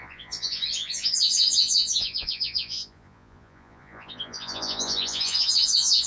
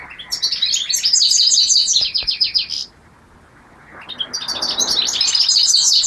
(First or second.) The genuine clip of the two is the second